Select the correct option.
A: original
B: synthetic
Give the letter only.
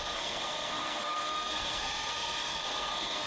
B